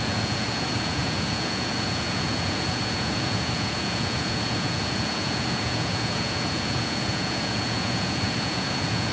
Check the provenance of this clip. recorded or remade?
remade